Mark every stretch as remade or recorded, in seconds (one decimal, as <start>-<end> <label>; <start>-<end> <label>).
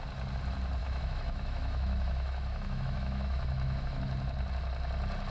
0.0-0.8 recorded; 0.8-4.0 remade; 4.0-5.3 recorded